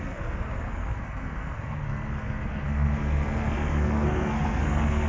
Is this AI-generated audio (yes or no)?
yes